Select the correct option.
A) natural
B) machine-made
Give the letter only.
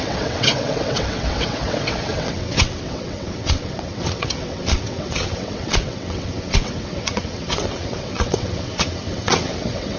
B